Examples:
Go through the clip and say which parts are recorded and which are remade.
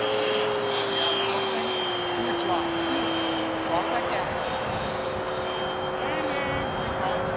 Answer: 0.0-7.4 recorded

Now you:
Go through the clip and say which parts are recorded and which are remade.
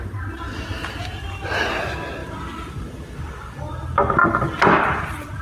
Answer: 0.0-2.2 recorded; 2.2-5.4 remade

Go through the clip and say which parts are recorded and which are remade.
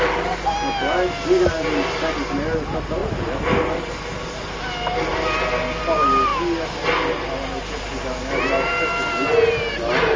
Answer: 0.0-3.0 recorded; 3.0-4.6 remade; 4.6-10.2 recorded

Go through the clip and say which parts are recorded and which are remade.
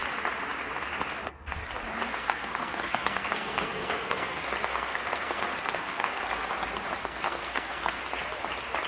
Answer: 0.0-1.2 recorded; 1.2-1.7 remade; 1.7-2.2 recorded; 2.2-6.2 remade; 6.2-7.0 recorded; 7.0-8.0 remade; 8.0-8.9 recorded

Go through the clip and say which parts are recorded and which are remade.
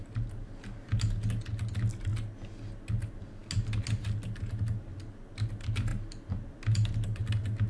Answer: 0.0-7.7 recorded